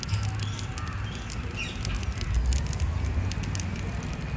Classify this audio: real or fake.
real